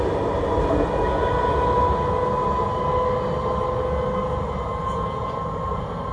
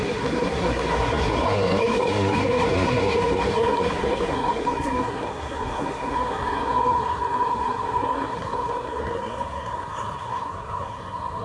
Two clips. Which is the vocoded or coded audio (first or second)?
second